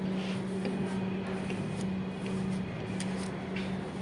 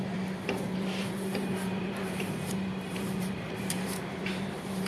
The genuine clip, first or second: first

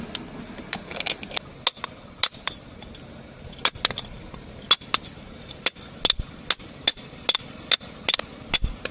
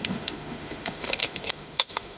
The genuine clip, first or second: first